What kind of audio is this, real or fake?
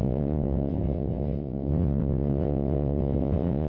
fake